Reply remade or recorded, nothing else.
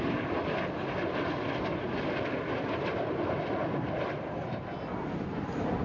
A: recorded